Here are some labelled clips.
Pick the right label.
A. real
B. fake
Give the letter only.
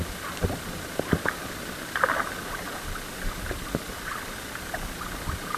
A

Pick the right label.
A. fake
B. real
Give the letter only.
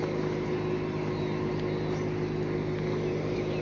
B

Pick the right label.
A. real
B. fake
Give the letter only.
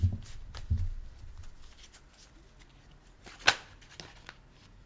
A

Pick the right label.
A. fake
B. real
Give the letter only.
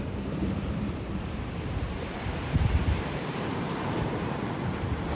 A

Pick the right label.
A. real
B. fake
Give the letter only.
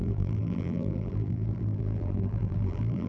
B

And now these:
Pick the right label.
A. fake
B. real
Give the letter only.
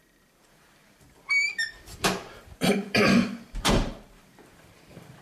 A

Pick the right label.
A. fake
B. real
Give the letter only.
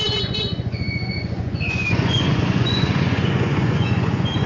A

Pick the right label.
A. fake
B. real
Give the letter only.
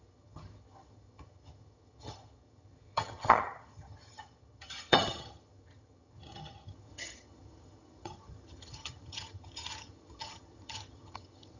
A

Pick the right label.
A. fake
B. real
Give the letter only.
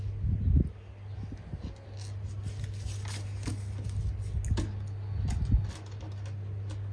B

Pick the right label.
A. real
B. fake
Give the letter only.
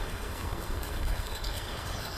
B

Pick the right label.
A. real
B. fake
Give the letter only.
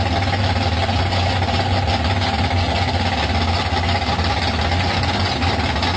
A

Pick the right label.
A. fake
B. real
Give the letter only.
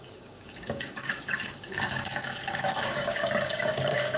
A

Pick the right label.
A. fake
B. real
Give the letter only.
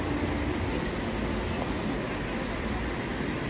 B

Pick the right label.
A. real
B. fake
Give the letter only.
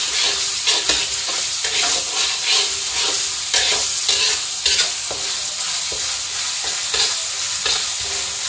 A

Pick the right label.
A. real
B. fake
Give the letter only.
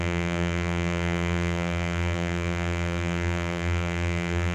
B